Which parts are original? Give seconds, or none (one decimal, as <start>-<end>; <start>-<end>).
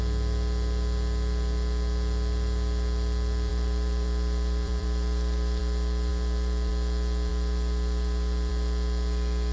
0.0-3.5; 5.6-6.1; 6.7-7.3; 8.5-9.5